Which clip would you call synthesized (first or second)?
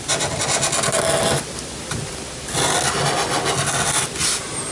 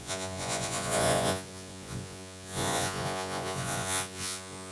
second